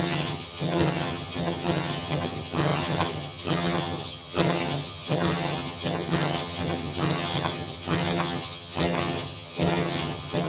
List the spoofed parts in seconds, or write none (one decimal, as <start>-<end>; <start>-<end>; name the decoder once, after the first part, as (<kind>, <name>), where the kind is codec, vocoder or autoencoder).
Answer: 0.0-10.5 (vocoder, HiFi-GAN)